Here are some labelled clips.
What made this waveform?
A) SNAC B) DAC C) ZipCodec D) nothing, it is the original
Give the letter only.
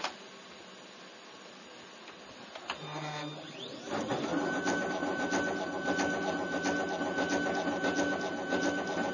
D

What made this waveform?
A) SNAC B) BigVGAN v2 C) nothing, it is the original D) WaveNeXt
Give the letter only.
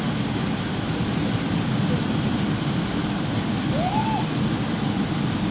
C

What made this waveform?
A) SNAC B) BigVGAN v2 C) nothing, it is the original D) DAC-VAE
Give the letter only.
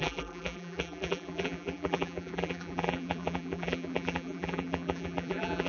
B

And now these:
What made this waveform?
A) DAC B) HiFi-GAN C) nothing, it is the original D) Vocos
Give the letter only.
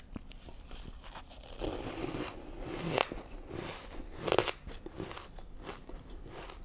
C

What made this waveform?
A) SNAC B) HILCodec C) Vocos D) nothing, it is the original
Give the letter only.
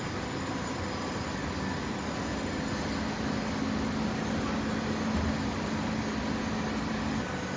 D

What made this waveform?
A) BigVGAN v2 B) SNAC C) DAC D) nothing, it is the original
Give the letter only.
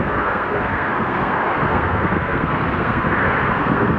B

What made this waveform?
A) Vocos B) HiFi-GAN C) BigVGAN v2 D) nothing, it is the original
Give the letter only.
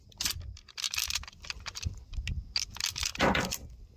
D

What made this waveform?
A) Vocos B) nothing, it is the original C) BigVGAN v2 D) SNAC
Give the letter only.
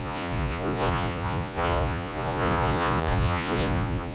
A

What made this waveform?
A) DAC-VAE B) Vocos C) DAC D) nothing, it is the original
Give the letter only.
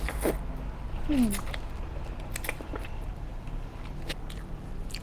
D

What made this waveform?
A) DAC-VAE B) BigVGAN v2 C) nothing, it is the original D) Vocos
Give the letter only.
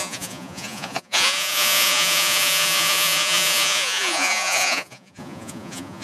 D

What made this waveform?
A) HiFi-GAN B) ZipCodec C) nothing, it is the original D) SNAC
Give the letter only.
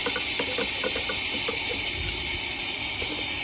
C